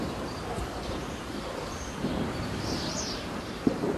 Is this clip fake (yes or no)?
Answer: yes